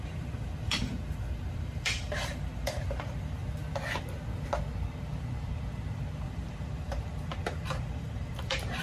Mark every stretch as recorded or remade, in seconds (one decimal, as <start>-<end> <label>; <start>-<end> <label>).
0.0-3.4 remade; 3.4-5.0 recorded; 5.0-8.8 remade